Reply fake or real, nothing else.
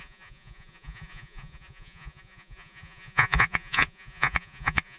fake